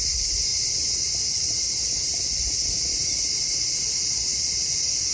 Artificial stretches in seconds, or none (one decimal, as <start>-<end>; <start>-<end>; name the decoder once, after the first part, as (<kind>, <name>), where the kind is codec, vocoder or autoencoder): none